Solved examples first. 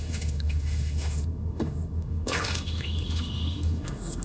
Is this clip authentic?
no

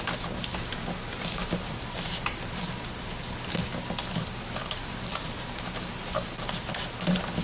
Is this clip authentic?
yes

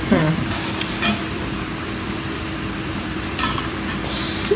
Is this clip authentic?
no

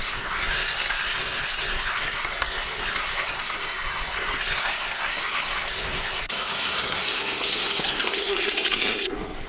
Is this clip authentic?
no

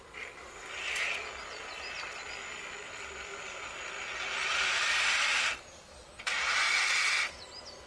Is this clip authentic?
yes